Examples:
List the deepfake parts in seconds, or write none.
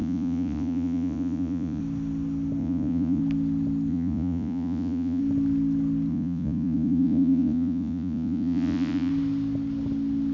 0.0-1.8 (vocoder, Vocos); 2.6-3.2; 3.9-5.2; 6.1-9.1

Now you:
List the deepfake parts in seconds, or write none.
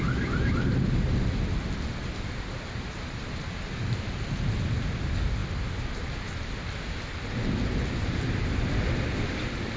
none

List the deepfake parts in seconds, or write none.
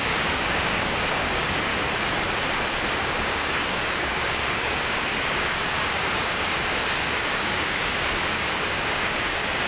0.0-1.7 (codec, DAC); 2.9-9.7